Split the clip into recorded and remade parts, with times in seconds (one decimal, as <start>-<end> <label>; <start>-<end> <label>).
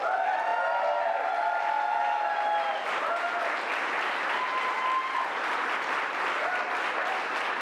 0.0-7.6 recorded